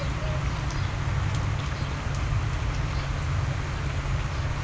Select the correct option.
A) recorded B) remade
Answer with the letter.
A